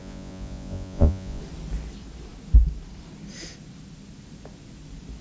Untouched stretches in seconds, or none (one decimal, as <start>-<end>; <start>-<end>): 1.4-5.2